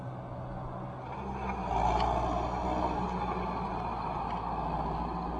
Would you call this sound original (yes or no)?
yes